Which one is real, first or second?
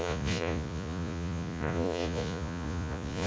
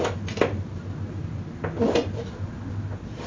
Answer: second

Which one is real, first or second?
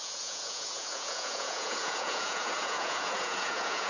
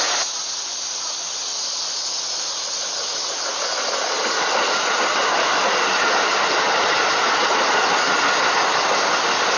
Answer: second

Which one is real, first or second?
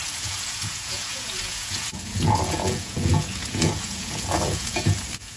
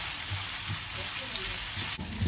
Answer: second